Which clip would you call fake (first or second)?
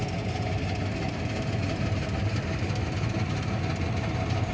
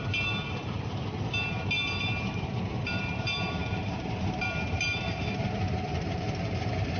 second